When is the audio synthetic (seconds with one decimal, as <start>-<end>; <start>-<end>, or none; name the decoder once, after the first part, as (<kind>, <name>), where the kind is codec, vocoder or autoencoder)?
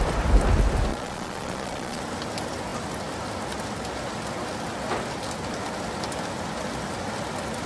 0.9-2.0 (vocoder, Vocos)